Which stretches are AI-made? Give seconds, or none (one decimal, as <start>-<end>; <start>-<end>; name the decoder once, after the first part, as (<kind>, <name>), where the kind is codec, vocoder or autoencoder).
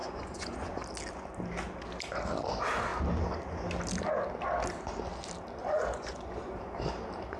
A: 0.0-0.8 (vocoder, Vocos); 5.6-6.6